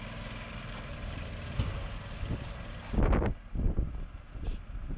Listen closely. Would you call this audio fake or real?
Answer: real